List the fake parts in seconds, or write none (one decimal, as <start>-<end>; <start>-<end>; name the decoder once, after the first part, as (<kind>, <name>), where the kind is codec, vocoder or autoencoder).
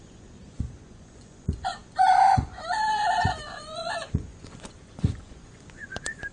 0.0-6.3 (vocoder, Vocos)